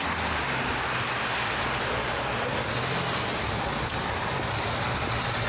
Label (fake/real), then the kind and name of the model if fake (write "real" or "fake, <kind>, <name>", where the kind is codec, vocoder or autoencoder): real